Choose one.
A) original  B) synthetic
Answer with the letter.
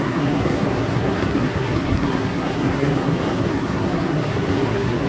B